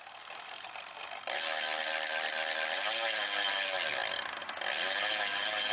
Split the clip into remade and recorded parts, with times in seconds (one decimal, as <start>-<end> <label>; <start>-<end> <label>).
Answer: 0.0-5.7 recorded